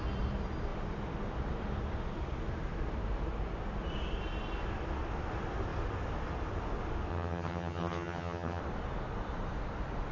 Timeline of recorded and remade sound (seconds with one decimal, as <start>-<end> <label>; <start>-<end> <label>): 0.0-7.1 recorded; 7.1-8.6 remade; 8.6-10.1 recorded